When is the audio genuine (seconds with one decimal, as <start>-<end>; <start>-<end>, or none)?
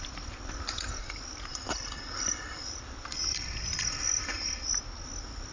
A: 0.0-1.5; 3.2-5.5